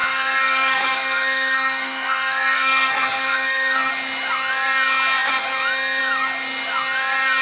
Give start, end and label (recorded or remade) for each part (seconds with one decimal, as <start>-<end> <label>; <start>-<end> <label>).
0.0-3.9 remade; 3.9-7.4 recorded